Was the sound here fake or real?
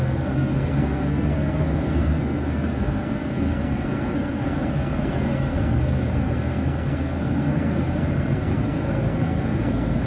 fake